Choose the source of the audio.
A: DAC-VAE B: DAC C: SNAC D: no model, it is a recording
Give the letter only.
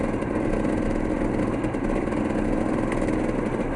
D